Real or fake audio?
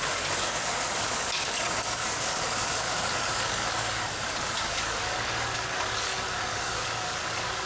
fake